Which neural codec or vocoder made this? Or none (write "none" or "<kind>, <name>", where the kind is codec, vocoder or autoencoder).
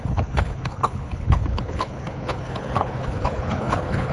codec, HILCodec